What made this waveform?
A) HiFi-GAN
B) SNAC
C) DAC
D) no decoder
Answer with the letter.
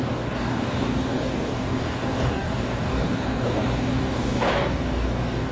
C